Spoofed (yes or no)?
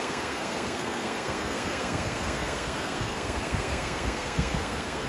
yes